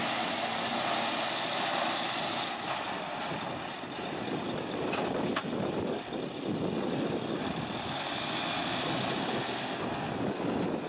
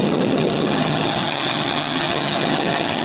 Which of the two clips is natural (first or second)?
first